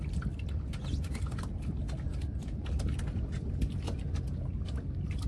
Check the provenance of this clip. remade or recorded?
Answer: recorded